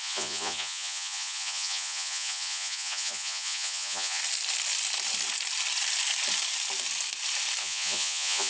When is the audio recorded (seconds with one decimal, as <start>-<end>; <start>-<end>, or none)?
4.2-7.6